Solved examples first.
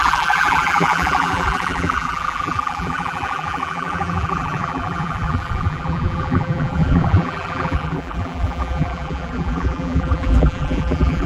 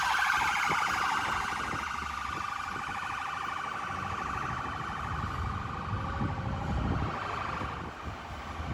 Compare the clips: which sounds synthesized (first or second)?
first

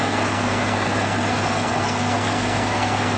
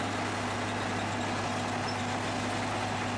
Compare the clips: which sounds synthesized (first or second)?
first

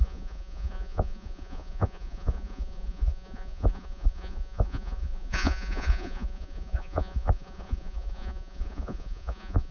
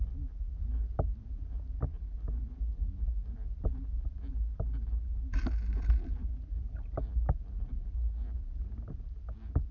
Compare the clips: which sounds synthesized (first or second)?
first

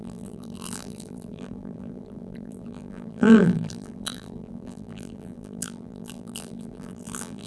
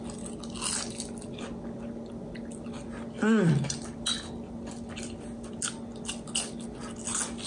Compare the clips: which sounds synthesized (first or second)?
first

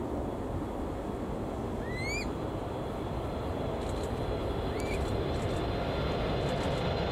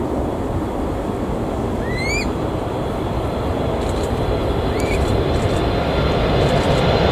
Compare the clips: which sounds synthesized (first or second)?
second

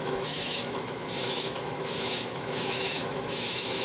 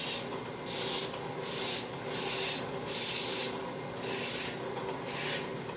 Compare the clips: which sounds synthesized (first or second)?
first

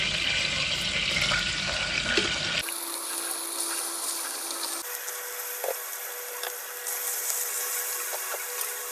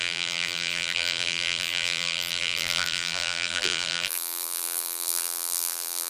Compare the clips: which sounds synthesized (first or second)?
second